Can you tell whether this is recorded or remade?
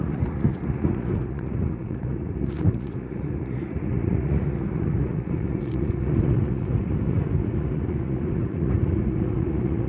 remade